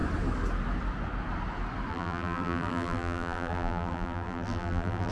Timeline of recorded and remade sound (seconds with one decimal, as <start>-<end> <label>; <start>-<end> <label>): 0.0-1.9 recorded; 1.9-5.1 remade